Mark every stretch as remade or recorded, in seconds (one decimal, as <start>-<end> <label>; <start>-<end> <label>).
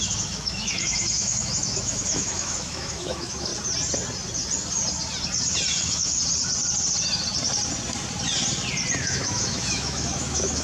0.0-3.5 remade; 3.5-5.8 recorded; 5.8-6.2 remade; 6.2-9.0 recorded; 9.0-10.6 remade